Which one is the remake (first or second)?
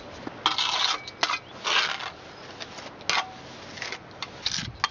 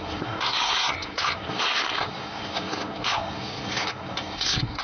second